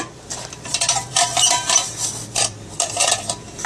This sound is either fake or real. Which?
fake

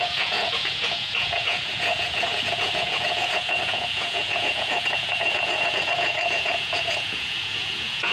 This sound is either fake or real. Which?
fake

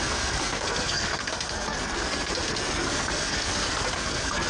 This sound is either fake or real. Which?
fake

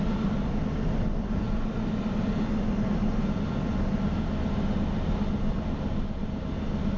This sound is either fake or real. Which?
real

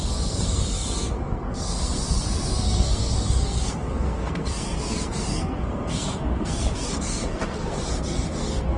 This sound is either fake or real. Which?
fake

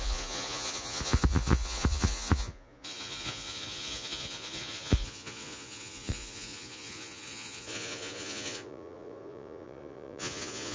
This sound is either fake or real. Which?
fake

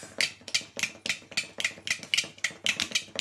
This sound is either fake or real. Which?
real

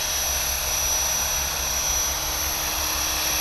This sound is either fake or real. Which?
real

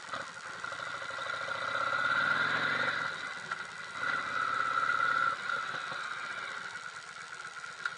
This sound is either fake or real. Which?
real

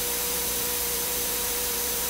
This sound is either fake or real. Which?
fake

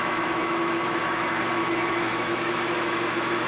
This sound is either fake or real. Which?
fake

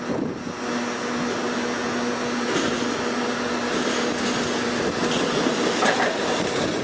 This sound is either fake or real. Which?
real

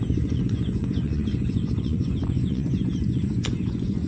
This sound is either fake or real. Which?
fake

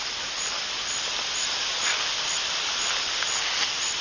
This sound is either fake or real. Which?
real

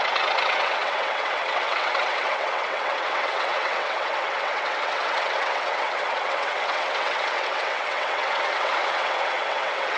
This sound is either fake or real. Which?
fake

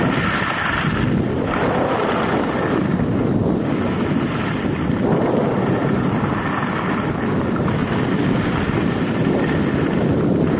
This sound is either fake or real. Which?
real